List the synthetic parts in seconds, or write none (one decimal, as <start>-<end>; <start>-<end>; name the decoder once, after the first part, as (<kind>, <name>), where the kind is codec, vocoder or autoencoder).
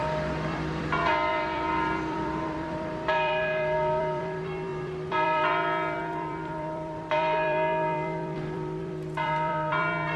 0.0-10.2 (vocoder, BigVGAN v2)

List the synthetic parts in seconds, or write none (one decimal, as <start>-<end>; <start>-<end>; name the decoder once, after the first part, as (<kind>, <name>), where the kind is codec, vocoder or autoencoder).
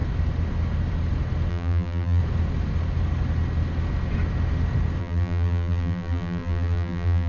1.5-2.2 (vocoder, BigVGAN v2); 5.0-7.3